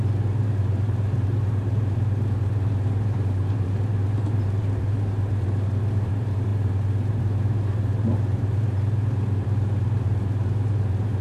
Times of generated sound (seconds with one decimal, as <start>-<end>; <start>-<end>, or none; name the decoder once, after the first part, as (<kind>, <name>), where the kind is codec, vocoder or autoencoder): 0.0-11.2 (vocoder, BigVGAN v2)